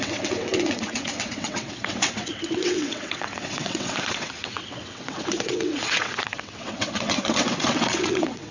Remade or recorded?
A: remade